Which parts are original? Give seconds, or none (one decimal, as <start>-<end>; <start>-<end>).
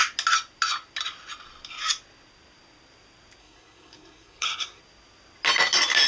0.0-3.4; 4.8-6.1